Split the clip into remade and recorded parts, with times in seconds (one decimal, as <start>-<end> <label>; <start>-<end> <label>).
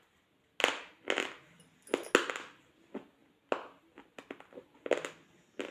0.0-5.7 recorded